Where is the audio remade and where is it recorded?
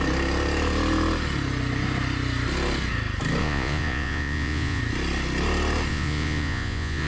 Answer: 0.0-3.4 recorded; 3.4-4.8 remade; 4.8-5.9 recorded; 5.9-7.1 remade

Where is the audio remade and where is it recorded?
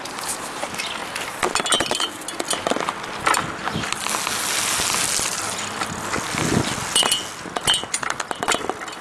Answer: 0.0-9.0 recorded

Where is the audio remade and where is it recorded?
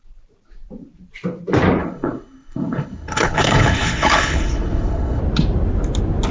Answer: 0.0-1.8 recorded; 1.8-5.2 remade; 5.2-6.3 recorded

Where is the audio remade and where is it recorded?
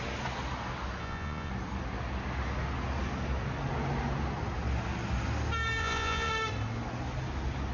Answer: 0.0-1.0 recorded; 1.0-1.5 remade; 1.5-5.8 recorded; 5.8-6.3 remade; 6.3-7.7 recorded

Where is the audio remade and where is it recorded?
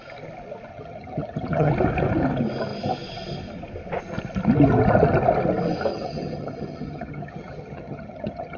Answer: 0.0-0.7 recorded; 0.7-1.7 remade; 1.7-5.9 recorded; 5.9-8.6 remade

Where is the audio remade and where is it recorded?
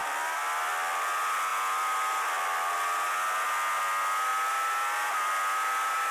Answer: 0.0-6.1 recorded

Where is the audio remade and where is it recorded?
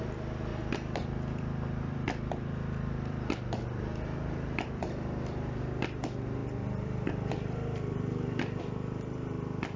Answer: 0.0-0.5 recorded; 0.5-5.6 remade; 5.6-6.4 recorded; 6.4-8.6 remade; 8.6-9.8 recorded